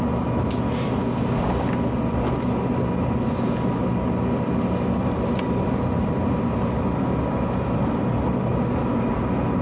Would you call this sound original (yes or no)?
yes